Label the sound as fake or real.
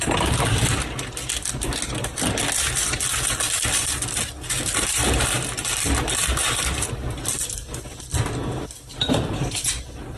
real